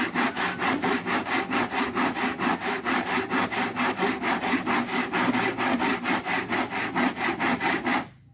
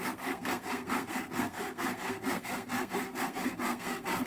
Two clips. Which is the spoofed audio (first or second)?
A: second